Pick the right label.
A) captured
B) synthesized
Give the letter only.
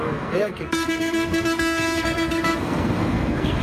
B